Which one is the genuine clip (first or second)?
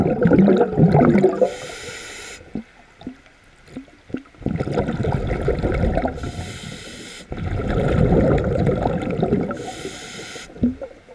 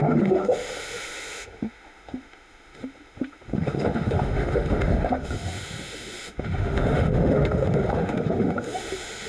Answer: first